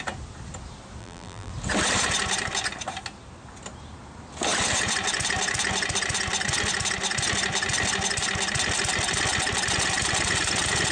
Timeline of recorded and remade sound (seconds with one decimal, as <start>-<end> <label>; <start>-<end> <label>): 0.0-1.0 recorded; 1.0-1.5 remade; 1.5-10.9 recorded